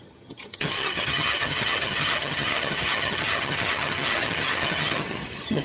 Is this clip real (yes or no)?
no